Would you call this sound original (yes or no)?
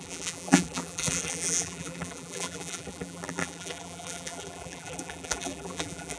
no